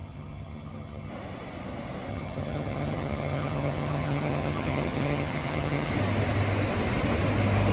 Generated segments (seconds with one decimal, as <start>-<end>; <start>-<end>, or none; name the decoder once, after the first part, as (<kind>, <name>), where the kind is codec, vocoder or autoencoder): 0.0-1.1 (vocoder, HiFi-GAN); 2.1-5.9